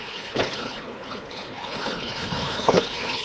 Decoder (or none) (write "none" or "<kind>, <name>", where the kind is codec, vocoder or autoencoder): codec, HILCodec